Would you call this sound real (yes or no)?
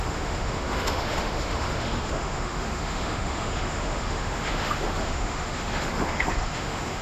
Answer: no